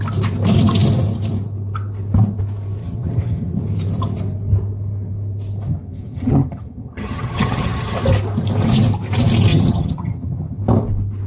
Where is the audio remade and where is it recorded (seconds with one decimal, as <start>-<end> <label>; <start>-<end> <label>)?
0.0-2.8 recorded; 2.8-3.6 remade; 3.6-5.7 recorded; 5.7-8.0 remade; 8.0-9.5 recorded; 9.5-10.6 remade; 10.6-11.3 recorded